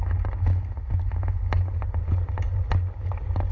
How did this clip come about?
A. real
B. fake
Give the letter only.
A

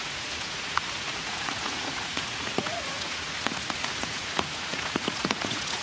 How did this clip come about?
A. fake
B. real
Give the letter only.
A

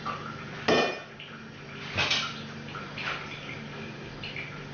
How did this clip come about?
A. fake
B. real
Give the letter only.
B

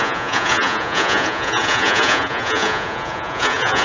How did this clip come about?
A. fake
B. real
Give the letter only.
A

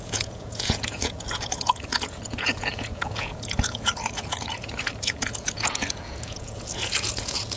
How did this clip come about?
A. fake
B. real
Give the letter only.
A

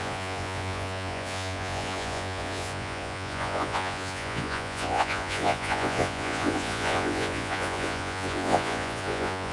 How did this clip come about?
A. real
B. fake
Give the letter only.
B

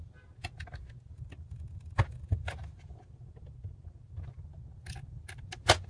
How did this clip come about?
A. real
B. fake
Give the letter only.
A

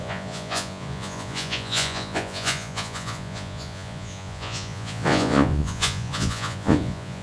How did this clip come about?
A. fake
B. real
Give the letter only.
A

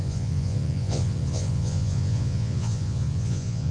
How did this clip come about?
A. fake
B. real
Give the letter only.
A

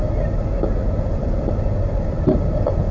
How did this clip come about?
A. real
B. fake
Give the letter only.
A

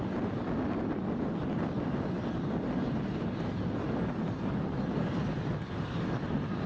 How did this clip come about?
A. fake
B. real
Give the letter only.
B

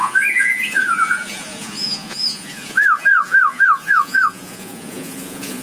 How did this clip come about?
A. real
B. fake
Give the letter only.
B